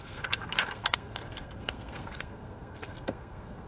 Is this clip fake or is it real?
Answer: fake